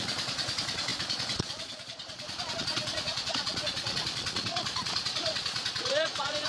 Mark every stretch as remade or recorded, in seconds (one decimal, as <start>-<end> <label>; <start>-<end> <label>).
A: 0.0-6.5 remade